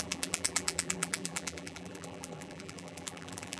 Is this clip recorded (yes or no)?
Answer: no